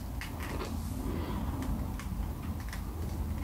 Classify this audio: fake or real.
real